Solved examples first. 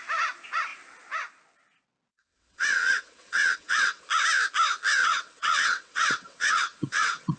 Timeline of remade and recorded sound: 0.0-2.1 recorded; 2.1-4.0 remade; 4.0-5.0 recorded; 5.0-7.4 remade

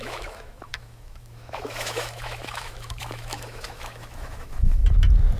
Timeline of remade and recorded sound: 0.0-4.8 remade; 4.8-5.4 recorded

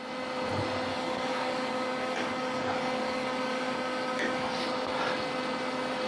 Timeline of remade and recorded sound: 0.0-0.9 recorded; 0.9-4.6 remade; 4.6-6.1 recorded

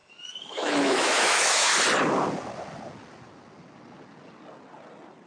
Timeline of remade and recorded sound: 0.0-1.7 remade; 1.7-5.3 recorded

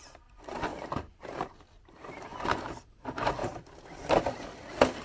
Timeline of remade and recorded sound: 0.0-0.7 recorded; 0.7-1.5 remade; 1.5-5.0 recorded

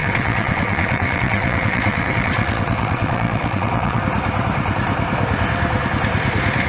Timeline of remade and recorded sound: 0.0-4.0 remade; 4.0-6.7 recorded

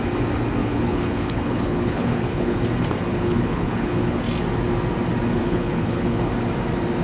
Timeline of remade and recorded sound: 0.0-0.6 recorded; 0.6-2.6 remade; 2.6-3.1 recorded; 3.1-4.2 remade; 4.2-5.4 recorded; 5.4-6.3 remade; 6.3-7.0 recorded